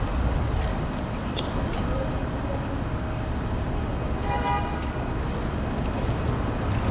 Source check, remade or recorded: recorded